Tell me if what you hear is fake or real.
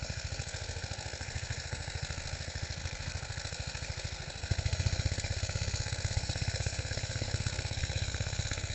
fake